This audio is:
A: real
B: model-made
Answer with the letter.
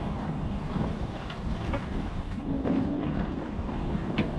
B